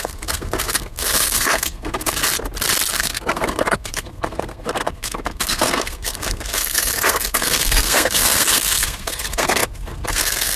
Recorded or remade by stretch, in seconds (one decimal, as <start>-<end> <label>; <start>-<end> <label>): 0.0-2.2 remade; 2.2-2.9 recorded; 2.9-10.6 remade